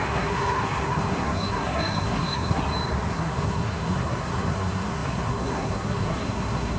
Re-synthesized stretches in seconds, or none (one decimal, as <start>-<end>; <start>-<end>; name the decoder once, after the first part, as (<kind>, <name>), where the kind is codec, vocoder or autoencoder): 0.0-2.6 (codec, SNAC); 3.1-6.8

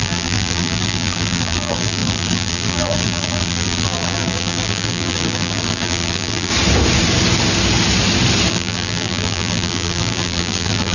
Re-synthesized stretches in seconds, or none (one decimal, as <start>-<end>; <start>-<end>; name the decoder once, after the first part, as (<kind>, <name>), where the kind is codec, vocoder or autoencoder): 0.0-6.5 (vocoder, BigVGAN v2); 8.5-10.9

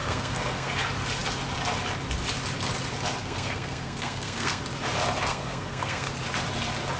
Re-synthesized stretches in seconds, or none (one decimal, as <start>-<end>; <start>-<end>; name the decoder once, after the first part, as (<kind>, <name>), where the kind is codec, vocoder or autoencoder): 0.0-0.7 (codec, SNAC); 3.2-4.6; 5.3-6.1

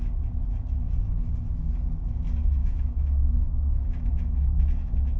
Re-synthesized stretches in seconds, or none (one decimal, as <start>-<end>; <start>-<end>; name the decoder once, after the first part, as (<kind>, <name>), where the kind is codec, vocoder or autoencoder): 2.6-5.2 (autoencoder, DAC-VAE)

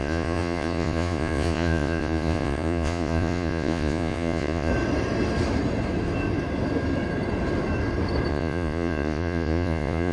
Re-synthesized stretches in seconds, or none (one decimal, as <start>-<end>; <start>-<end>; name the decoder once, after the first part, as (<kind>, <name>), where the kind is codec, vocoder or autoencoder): 0.0-4.7 (vocoder, Vocos); 8.3-10.1